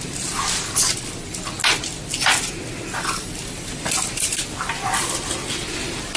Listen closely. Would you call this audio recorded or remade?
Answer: recorded